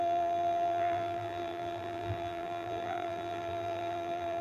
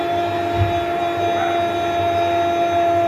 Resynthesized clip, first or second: first